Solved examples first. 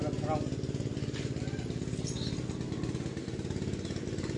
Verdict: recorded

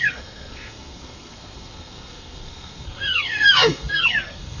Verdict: remade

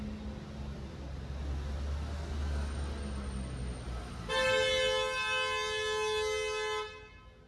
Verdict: recorded